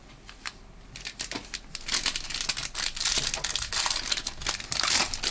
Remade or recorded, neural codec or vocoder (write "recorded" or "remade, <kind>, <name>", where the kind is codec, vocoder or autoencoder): recorded